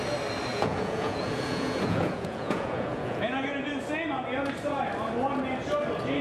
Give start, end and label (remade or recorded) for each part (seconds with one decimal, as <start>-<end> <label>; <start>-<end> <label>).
0.0-0.5 recorded; 0.5-3.7 remade; 3.7-6.2 recorded